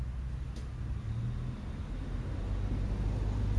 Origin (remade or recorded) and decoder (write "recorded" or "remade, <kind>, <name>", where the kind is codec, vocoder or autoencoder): recorded